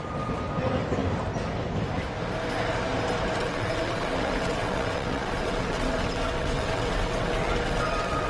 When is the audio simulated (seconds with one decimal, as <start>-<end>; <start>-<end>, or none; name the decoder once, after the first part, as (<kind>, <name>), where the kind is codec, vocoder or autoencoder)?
3.4-8.3 (vocoder, WaveNeXt)